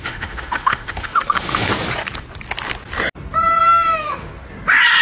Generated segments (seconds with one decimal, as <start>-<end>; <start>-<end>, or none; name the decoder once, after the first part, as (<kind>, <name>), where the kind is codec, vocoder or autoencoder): 0.0-1.7 (autoencoder, DAC-VAE); 3.6-4.3